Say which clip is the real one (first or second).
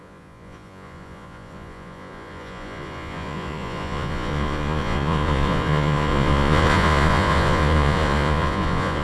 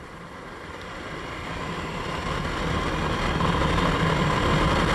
second